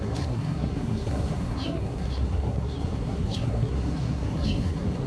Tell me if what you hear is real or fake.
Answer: fake